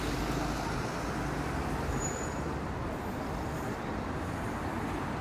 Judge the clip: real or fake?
real